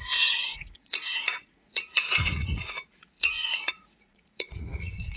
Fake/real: fake